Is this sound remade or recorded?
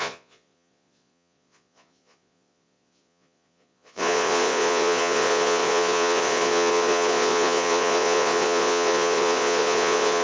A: remade